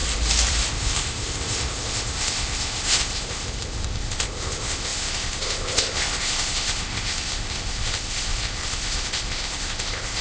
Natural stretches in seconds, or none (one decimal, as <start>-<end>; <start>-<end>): 0.0-0.7